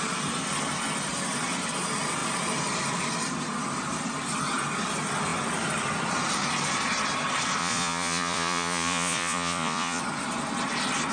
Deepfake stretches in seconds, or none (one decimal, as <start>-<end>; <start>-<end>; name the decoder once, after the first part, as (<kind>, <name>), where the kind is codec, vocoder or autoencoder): 7.6-10.0 (vocoder, Vocos)